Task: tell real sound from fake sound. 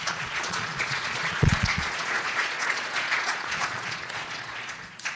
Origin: fake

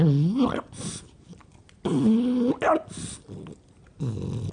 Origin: real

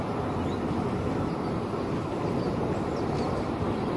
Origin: real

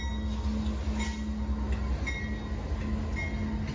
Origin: real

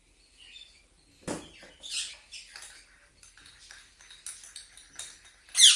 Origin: real